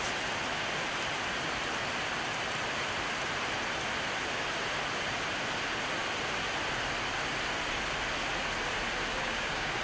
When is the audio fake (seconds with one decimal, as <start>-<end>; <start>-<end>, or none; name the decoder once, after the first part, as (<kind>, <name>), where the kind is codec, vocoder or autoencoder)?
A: 9.1-9.8 (codec, DAC)